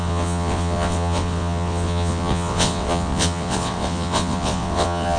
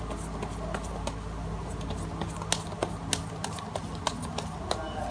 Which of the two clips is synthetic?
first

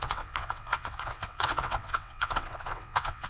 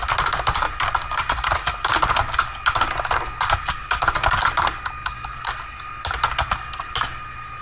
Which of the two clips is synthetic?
first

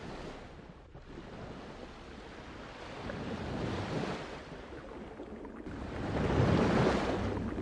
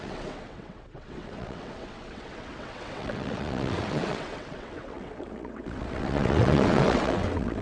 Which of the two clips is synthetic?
second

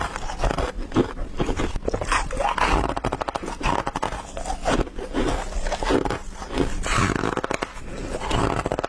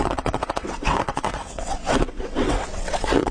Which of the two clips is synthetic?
second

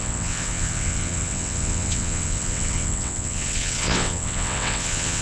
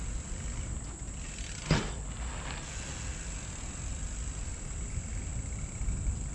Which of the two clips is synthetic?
first